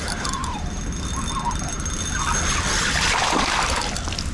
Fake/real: real